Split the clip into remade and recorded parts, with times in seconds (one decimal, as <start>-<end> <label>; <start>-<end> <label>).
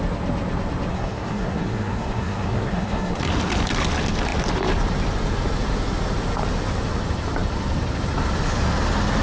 0.0-0.9 recorded; 0.9-3.2 remade; 3.2-9.2 recorded